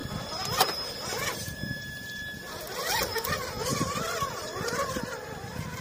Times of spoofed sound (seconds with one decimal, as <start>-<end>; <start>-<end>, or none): 0.0-5.8